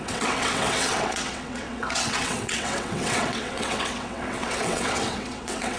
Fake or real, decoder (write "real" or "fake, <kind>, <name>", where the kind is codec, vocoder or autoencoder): fake, vocoder, WaveNeXt